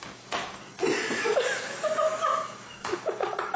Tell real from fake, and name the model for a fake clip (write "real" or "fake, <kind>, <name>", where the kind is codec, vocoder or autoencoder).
real